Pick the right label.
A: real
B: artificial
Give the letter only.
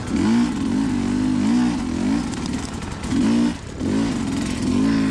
A